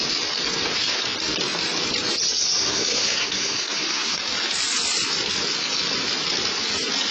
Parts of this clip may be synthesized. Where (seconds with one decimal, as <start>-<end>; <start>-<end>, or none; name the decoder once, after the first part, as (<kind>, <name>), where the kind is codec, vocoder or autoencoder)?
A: 2.4-4.2 (codec, SNAC)